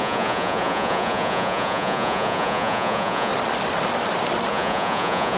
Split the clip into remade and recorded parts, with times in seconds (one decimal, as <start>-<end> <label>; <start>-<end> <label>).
0.0-3.3 remade; 3.3-4.5 recorded; 4.5-5.4 remade